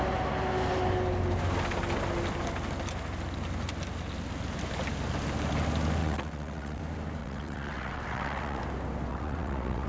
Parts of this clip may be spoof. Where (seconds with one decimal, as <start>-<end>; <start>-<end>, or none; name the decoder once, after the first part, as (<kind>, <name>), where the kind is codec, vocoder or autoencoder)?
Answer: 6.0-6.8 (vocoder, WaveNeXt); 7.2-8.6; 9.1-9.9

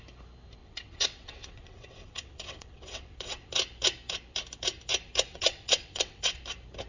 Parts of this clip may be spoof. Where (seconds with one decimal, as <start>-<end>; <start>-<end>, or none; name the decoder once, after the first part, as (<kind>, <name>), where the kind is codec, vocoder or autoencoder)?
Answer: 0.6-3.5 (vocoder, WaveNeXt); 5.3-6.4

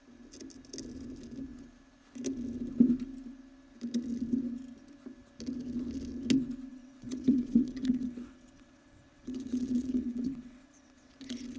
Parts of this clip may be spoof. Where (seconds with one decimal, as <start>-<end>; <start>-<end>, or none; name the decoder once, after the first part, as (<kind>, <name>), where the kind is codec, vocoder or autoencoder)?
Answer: 6.7-11.1 (vocoder, WaveNeXt)

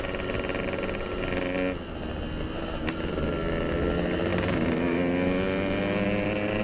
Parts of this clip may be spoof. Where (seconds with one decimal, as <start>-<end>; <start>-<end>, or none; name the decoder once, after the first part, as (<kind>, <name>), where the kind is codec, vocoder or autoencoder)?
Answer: none